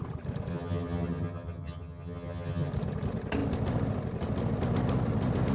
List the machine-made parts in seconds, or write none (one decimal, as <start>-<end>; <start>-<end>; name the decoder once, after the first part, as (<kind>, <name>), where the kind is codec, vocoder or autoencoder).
0.5-2.7 (vocoder, HiFi-GAN)